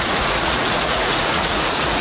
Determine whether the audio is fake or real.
fake